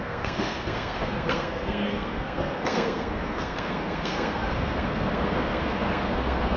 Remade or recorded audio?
remade